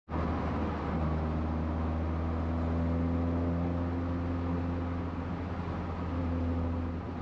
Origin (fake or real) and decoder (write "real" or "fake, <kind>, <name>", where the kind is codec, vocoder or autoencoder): real